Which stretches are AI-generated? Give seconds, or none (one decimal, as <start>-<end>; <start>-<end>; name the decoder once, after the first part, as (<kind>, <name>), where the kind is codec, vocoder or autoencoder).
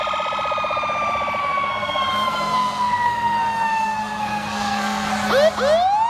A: 1.4-5.1 (codec, SNAC)